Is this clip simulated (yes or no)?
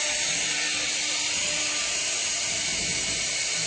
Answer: no